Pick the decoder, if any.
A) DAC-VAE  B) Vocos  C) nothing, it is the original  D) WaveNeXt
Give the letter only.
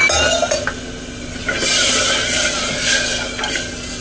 C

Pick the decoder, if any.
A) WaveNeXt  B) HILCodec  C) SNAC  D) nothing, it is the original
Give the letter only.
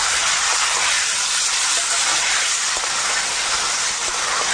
D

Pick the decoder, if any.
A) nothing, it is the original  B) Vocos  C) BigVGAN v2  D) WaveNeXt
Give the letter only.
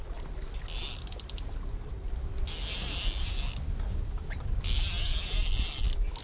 A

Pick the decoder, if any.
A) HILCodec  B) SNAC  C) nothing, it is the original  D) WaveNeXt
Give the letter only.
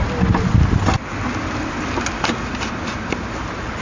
C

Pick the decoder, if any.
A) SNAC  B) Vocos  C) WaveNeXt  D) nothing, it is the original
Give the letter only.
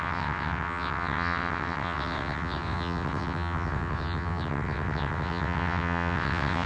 C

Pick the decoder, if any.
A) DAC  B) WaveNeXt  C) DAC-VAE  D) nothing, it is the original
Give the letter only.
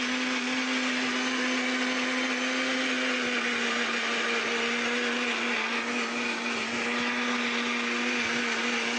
D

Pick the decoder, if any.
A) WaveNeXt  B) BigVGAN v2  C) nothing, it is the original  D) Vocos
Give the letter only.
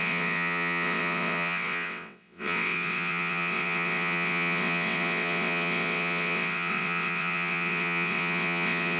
A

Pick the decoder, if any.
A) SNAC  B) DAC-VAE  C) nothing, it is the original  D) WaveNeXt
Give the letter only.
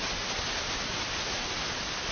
C